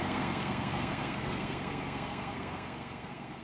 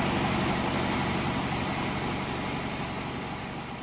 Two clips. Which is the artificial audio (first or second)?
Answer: first